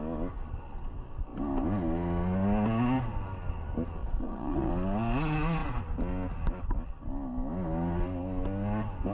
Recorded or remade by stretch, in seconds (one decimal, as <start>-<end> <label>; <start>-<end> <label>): 0.0-4.0 recorded; 4.0-4.7 remade; 4.7-9.1 recorded